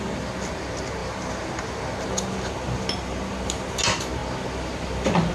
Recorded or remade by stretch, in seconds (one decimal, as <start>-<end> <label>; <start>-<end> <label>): 0.0-5.3 recorded